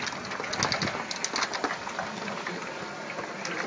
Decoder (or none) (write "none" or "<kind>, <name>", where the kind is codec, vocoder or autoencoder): none